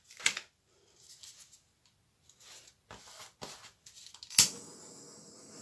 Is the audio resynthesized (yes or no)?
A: no